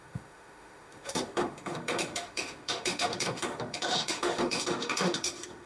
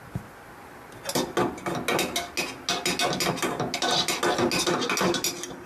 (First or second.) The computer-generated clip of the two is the first